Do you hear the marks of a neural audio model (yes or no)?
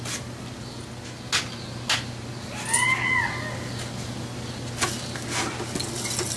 no